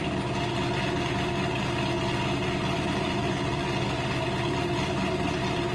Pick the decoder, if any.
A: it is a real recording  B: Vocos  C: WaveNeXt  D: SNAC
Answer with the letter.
A